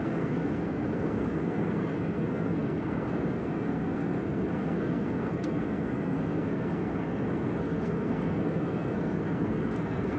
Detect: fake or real fake